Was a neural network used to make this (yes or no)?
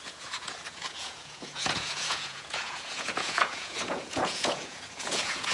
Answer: yes